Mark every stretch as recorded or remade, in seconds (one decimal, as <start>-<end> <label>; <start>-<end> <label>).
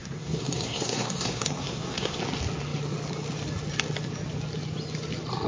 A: 0.0-2.2 remade; 2.2-5.5 recorded